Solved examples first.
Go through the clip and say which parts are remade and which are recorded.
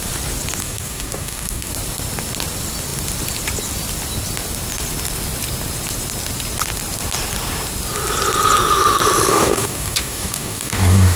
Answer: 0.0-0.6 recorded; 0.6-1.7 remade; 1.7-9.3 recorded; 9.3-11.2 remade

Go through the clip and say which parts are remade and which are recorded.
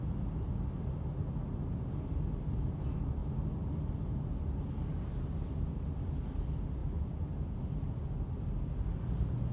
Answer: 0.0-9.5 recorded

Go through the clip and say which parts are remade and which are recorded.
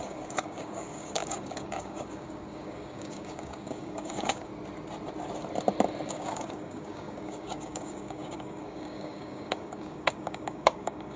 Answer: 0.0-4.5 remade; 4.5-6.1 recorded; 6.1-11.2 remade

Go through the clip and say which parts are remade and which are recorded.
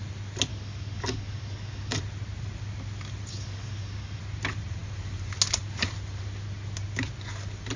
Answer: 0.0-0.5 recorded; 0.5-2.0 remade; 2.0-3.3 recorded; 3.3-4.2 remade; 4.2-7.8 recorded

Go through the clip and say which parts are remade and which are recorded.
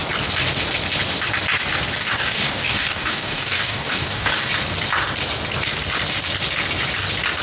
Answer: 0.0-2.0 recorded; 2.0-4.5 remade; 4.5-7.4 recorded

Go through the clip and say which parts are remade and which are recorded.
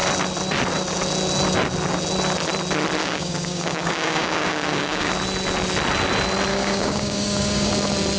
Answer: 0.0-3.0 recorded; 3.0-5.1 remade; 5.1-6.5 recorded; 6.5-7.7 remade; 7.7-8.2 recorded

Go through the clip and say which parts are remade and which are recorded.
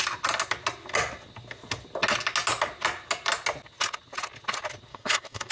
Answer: 0.0-4.9 recorded; 4.9-5.5 remade